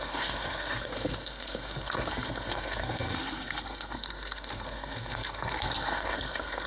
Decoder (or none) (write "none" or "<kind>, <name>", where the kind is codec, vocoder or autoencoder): codec, SNAC